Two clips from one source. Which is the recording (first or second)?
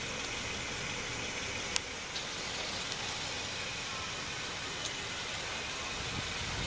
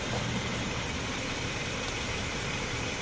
first